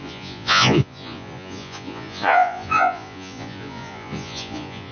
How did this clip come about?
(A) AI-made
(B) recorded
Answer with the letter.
A